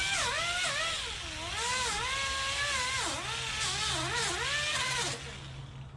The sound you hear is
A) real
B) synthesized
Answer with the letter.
A